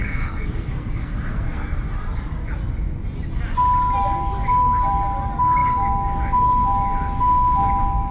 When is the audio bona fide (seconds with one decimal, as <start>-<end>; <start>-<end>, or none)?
1.8-8.1